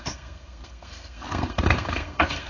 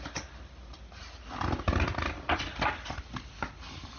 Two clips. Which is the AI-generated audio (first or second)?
first